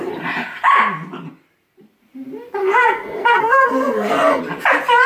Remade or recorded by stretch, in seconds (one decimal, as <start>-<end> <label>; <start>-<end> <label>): 0.0-2.6 recorded; 2.6-4.4 remade; 4.4-5.1 recorded